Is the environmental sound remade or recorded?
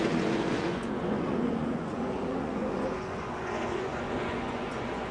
remade